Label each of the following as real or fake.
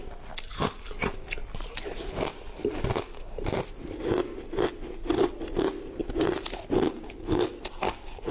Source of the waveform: real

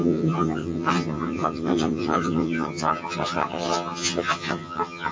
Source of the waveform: fake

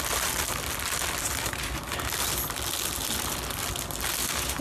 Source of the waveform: real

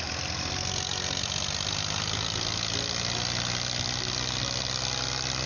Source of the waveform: real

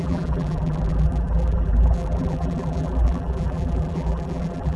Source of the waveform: fake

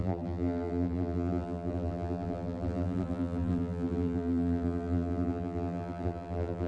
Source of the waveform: fake